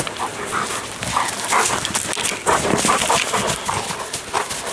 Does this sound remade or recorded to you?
recorded